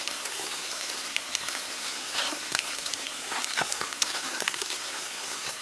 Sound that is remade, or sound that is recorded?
remade